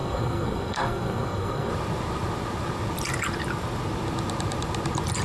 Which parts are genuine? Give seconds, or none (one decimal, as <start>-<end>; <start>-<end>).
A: 1.7-5.2